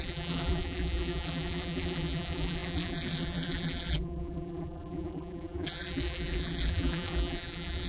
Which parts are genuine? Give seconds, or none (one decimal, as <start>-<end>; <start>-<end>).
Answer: none